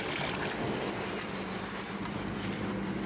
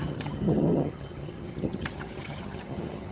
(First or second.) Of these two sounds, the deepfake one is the second